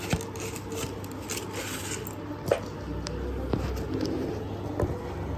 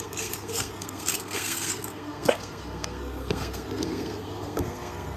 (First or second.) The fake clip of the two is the second